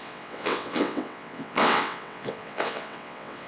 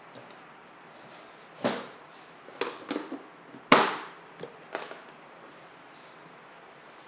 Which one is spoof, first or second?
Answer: first